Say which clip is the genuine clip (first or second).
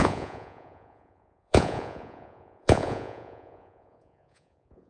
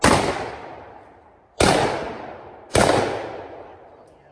second